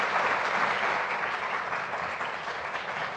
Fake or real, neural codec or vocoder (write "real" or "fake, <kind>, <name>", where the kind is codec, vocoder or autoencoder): real